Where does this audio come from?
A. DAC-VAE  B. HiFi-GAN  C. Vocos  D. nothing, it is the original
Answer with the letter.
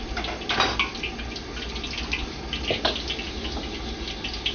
D